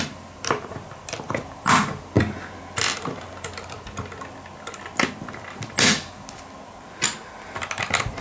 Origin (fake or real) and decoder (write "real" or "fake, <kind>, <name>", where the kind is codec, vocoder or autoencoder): real